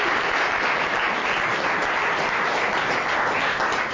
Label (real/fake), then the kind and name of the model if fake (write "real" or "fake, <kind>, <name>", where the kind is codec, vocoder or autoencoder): real